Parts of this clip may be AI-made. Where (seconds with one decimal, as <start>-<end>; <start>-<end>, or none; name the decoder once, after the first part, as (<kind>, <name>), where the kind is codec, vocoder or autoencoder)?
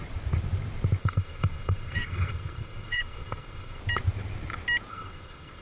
1.0-3.8 (codec, SNAC); 4.9-5.6